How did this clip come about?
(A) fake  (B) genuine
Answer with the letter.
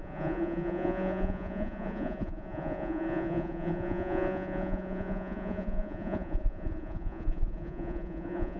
A